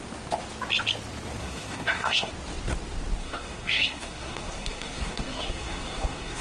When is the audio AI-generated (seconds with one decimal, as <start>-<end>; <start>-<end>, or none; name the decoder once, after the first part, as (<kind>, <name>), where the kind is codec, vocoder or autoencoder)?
1.4-2.3 (codec, SNAC); 3.2-6.4